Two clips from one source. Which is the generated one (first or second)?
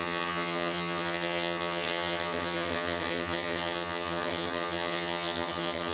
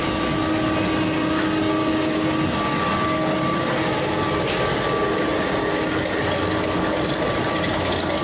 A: first